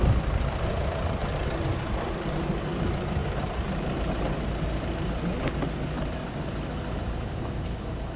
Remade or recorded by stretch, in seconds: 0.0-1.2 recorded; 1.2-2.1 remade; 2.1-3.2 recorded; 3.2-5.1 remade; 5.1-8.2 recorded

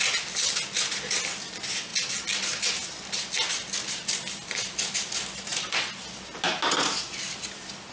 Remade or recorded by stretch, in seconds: 0.0-7.9 recorded

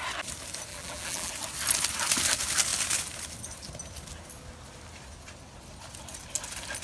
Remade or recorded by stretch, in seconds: 0.0-0.7 recorded; 0.7-1.3 remade; 1.3-6.8 recorded

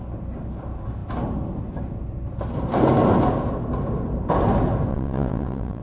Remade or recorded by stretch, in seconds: 0.0-4.9 recorded; 4.9-5.8 remade

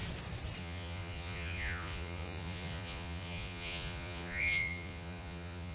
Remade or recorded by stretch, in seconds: 0.0-0.6 recorded; 0.6-5.7 remade

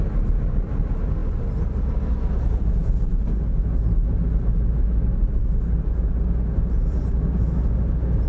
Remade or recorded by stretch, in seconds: 0.0-8.3 recorded